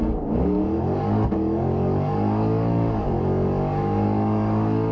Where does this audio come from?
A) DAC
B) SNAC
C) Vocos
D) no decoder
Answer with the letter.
A